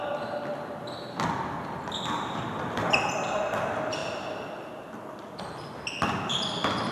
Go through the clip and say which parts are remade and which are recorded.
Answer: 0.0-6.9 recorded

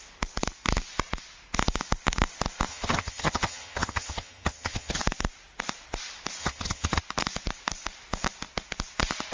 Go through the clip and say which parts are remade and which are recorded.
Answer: 0.0-2.7 recorded; 2.7-5.0 remade; 5.0-6.4 recorded; 6.4-7.0 remade; 7.0-9.3 recorded

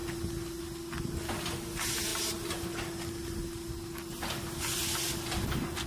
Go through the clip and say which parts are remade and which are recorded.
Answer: 0.0-5.9 recorded

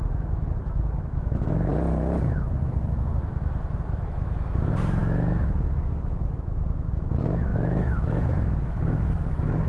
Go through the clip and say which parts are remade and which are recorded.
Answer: 0.0-1.7 remade; 1.7-2.7 recorded; 2.7-9.7 remade

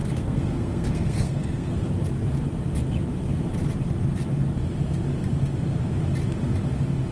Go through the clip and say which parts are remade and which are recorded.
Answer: 0.0-1.8 remade; 1.8-7.1 recorded